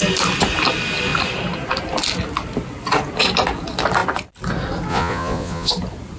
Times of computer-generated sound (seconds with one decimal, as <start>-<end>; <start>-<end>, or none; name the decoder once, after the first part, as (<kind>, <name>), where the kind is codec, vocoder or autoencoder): 4.9-5.7 (vocoder, Vocos)